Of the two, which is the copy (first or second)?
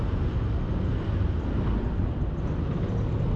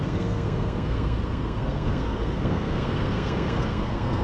second